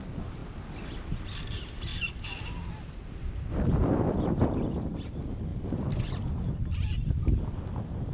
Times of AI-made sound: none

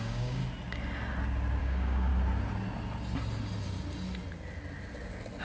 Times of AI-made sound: 0.0-0.4 (codec, DAC); 1.6-2.1

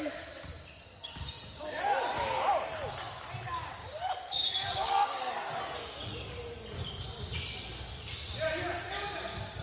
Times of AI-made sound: 1.0-1.8 (codec, DAC); 3.8-5.3

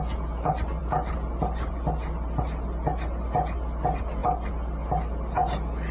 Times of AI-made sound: none

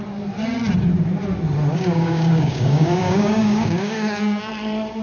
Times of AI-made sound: 1.7-4.5 (codec, DAC)

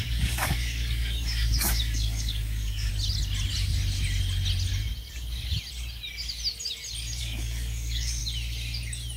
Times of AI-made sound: 0.0-2.9 (codec, DAC); 7.2-8.2

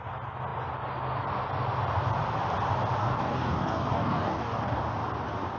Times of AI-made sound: 3.0-4.8 (codec, DAC)